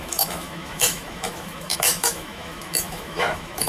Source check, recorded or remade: remade